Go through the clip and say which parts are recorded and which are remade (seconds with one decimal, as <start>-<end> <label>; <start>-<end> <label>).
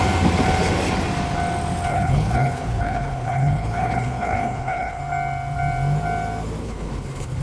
0.0-1.9 recorded; 1.9-5.0 remade; 5.0-6.6 recorded; 6.6-7.4 remade